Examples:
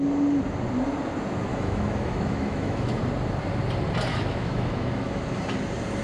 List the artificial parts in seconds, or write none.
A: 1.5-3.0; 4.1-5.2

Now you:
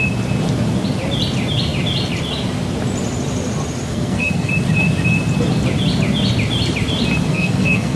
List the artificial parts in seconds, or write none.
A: 3.9-4.5; 7.3-8.0

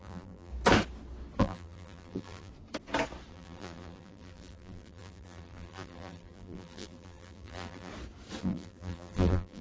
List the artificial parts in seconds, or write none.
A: 0.0-0.5; 1.4-2.5; 3.3-7.9; 8.4-9.6

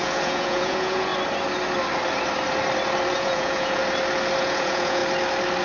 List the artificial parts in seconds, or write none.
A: 0.0-1.1; 3.1-3.8; 4.4-5.0

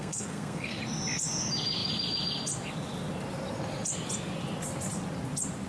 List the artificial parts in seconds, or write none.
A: 0.0-0.8

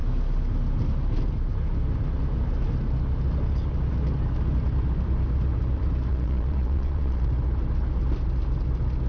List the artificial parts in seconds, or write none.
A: 6.1-7.3

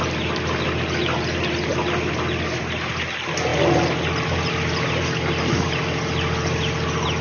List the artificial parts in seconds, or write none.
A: 0.0-1.7; 2.9-3.5; 4.3-7.2

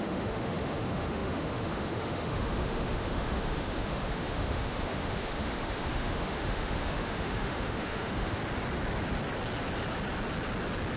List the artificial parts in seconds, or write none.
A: 0.0-8.4